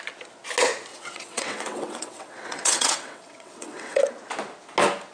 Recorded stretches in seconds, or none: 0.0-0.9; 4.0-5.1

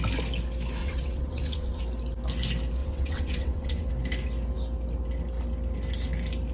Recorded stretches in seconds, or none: 0.0-0.8; 1.8-2.8; 3.9-6.5